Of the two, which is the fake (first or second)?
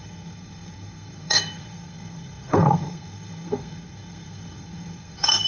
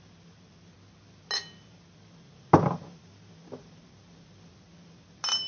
first